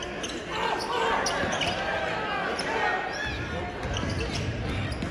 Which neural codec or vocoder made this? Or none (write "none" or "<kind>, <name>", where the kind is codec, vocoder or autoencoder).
none